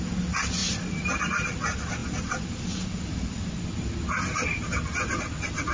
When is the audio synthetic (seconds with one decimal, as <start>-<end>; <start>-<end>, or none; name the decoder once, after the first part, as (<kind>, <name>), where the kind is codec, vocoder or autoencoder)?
2.0-3.5 (vocoder, BigVGAN v2)